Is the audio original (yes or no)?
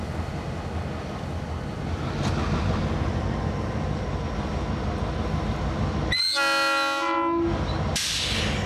yes